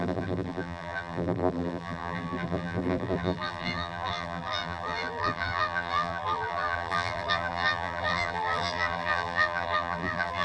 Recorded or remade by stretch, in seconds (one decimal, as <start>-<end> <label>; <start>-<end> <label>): 0.0-10.4 remade

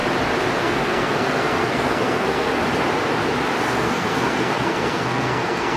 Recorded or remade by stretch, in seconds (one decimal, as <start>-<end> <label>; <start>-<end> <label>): 0.0-0.6 recorded; 0.6-2.6 remade; 2.6-3.6 recorded; 3.6-5.8 remade

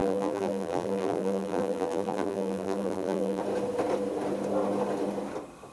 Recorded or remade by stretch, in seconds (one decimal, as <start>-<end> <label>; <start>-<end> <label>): 0.0-3.4 remade; 3.4-5.7 recorded

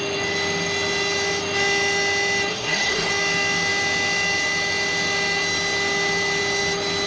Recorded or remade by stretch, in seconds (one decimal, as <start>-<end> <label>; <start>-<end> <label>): 0.0-2.5 recorded; 2.5-3.1 remade; 3.1-7.1 recorded

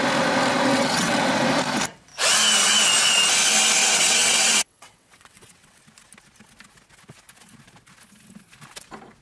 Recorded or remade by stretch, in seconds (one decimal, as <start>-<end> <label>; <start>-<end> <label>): 0.0-0.7 recorded; 0.7-1.2 remade; 1.2-3.8 recorded; 3.8-5.8 remade; 5.8-9.2 recorded